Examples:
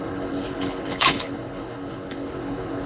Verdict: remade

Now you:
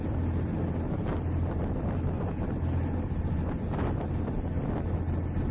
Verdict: recorded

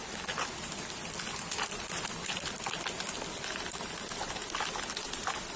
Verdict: recorded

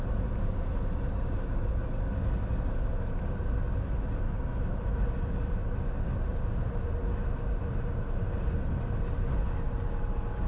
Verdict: recorded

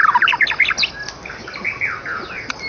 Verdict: recorded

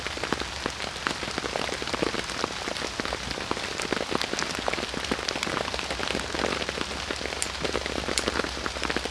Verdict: recorded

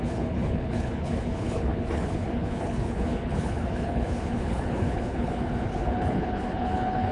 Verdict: remade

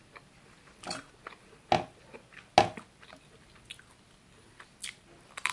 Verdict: recorded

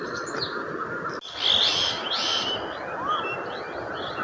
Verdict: recorded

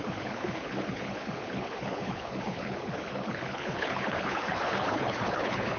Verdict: remade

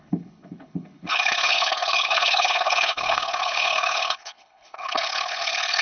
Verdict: remade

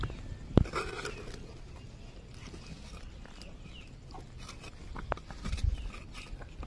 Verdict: recorded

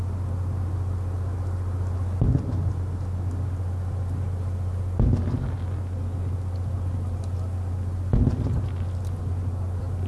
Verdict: recorded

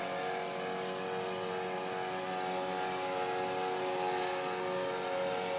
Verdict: recorded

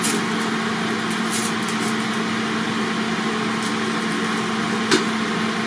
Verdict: recorded